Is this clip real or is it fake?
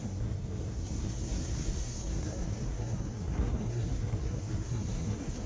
fake